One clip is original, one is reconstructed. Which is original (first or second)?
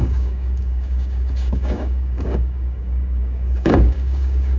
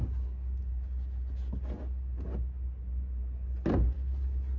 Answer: second